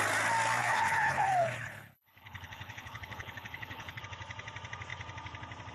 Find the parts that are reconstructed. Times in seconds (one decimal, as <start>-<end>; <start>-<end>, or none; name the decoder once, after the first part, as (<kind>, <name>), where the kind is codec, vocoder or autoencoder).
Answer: 0.6-4.0 (codec, HILCodec)